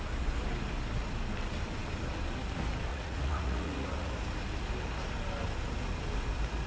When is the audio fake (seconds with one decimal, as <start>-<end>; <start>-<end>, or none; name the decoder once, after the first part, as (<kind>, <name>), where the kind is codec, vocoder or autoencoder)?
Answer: 2.9-4.1 (vocoder, Vocos)